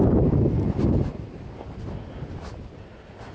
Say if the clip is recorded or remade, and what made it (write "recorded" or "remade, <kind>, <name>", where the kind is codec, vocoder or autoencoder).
recorded